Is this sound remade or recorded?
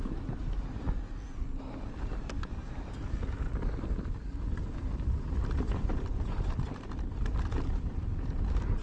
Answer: recorded